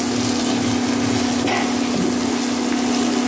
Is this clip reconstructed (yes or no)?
no